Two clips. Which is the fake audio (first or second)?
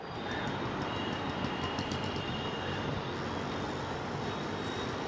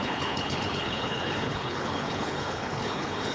second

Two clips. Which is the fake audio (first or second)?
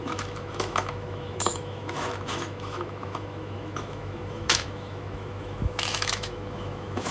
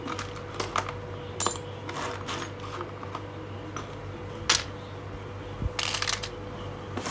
first